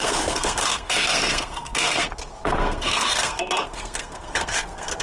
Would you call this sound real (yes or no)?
no